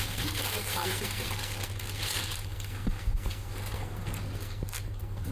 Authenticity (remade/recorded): remade